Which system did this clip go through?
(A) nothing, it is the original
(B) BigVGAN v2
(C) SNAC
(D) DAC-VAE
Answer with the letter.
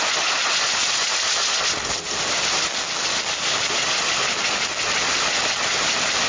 A